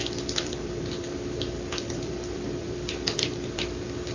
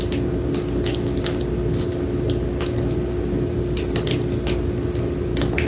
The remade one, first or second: first